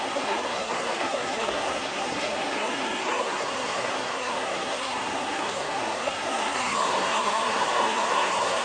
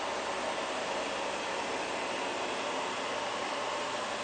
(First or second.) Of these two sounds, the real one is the second